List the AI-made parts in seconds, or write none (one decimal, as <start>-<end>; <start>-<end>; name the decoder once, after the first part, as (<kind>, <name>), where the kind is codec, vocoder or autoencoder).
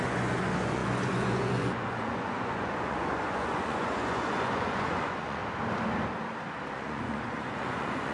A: 0.0-5.4 (vocoder, Vocos); 6.7-8.1